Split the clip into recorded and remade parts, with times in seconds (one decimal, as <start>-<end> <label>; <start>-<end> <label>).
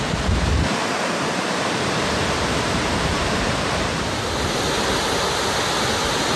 0.0-0.8 recorded; 0.8-4.6 remade; 4.6-6.4 recorded